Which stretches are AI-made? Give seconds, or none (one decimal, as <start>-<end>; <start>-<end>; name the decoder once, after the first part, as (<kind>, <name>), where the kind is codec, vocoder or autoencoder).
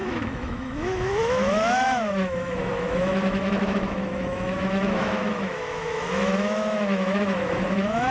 0.0-8.1 (autoencoder, DAC-VAE)